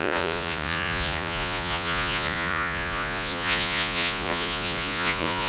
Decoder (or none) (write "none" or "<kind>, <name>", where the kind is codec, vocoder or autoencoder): vocoder, Vocos